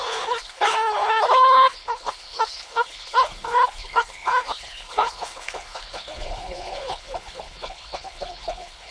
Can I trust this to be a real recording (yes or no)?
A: no